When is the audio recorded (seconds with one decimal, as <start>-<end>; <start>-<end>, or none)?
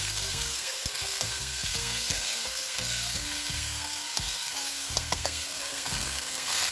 none